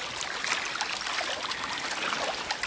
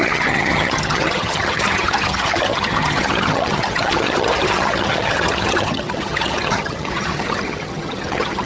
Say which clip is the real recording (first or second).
first